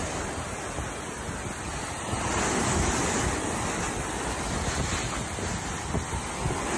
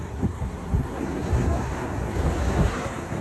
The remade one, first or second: second